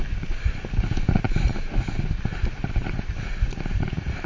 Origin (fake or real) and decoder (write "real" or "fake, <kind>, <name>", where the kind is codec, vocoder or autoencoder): real